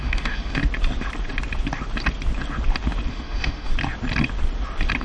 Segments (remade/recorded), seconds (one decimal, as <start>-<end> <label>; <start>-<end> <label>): 0.0-0.6 remade; 0.6-3.1 recorded; 3.1-3.7 remade; 3.7-5.0 recorded